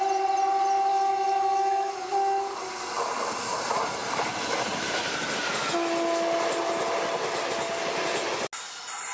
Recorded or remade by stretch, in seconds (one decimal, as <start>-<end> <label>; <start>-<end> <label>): 0.0-0.9 recorded; 0.9-1.9 remade; 1.9-9.1 recorded